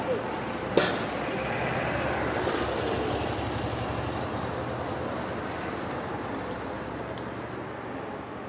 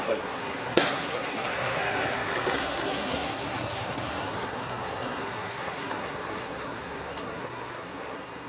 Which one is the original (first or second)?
first